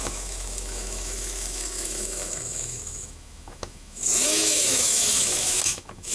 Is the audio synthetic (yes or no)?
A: yes